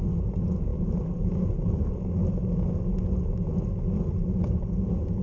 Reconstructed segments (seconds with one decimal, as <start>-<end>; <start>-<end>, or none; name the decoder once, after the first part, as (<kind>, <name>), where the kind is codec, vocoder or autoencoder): none